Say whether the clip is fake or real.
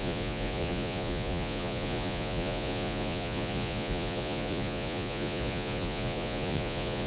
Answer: fake